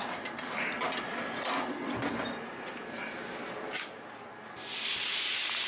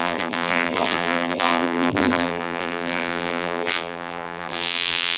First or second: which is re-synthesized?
second